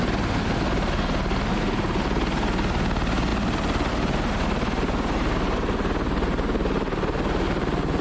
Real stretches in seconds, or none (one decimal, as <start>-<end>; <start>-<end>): 0.0-8.0